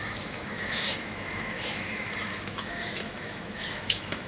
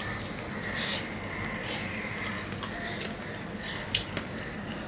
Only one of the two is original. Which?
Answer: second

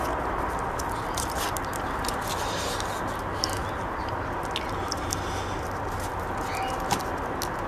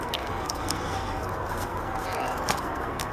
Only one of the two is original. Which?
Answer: first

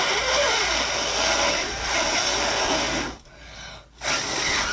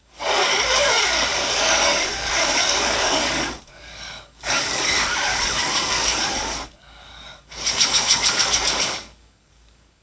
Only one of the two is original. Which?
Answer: first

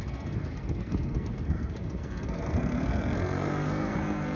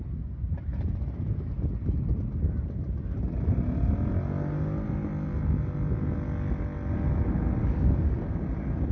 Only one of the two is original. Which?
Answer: second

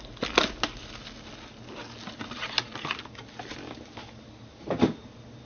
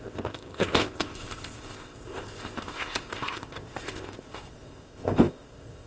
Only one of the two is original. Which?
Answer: first